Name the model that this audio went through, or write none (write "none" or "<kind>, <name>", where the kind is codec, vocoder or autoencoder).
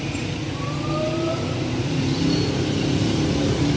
none